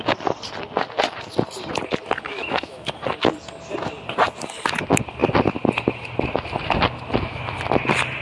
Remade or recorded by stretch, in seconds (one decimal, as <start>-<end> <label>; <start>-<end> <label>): 0.0-2.3 recorded; 2.3-2.9 remade; 2.9-8.2 recorded